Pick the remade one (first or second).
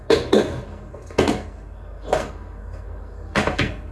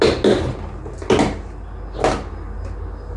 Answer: first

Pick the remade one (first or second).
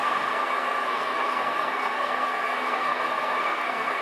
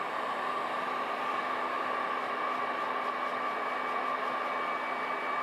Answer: first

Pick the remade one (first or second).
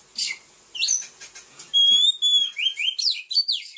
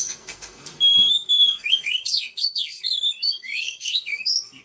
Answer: second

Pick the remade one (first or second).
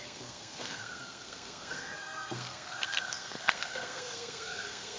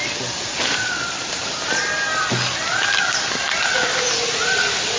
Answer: first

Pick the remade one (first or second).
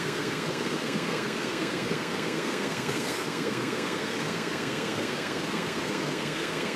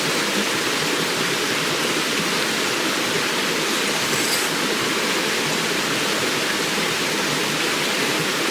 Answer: first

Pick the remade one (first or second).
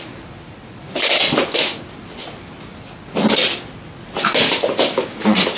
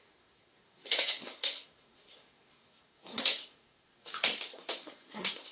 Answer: second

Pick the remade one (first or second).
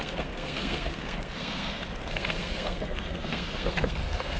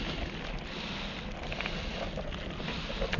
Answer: first